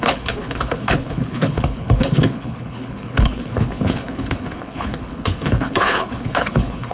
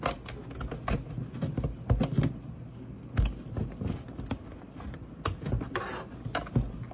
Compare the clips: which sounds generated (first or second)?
first